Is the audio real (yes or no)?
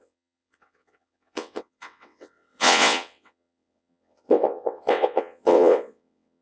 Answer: no